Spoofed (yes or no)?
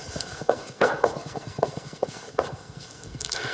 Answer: yes